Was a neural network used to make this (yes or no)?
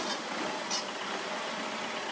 no